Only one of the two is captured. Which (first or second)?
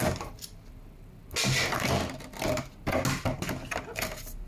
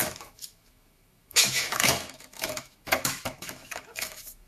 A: first